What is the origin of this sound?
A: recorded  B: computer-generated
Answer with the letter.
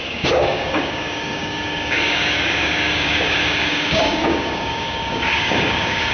B